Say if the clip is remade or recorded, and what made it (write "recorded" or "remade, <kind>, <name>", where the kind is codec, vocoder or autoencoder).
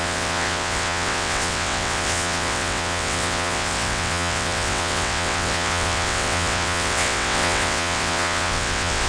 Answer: remade, vocoder, WaveNeXt